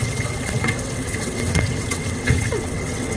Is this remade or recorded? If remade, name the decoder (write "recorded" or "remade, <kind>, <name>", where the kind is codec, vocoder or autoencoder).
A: remade, vocoder, WaveNeXt